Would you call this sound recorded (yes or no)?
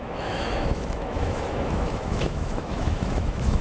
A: no